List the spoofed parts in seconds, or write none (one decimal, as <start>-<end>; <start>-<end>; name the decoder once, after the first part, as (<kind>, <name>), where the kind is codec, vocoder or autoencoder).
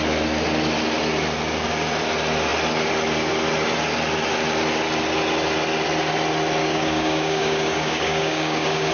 6.6-8.9 (codec, DAC)